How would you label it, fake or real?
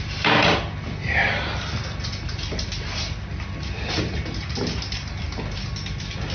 real